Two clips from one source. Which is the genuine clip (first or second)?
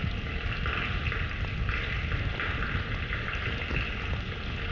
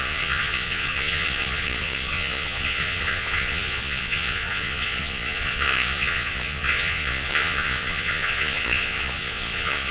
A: first